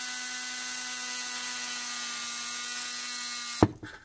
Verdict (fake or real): real